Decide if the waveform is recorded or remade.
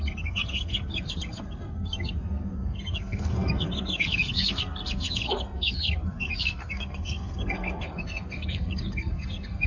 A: remade